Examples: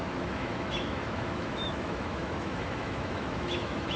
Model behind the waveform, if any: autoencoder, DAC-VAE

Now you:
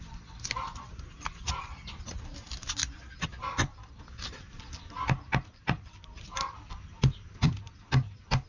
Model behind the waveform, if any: none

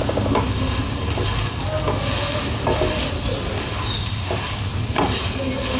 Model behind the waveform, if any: none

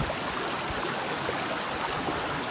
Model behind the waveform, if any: none